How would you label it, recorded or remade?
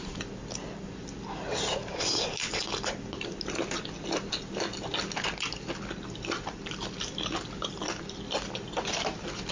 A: recorded